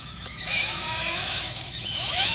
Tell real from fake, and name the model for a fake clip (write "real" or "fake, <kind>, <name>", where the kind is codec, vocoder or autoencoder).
fake, autoencoder, DAC-VAE